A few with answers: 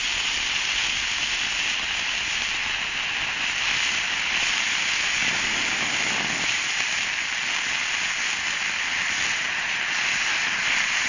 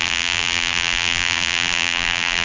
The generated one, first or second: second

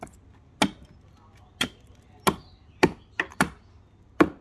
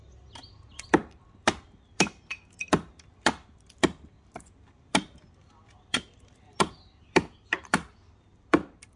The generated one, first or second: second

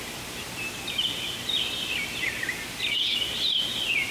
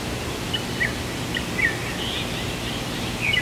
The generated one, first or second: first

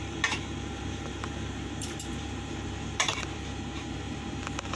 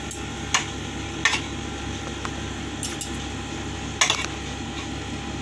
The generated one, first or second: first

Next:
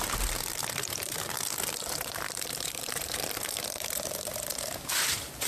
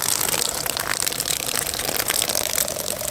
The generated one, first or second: first